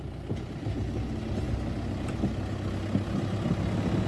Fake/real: real